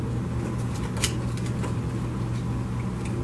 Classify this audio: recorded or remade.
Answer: recorded